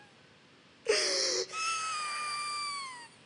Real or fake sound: real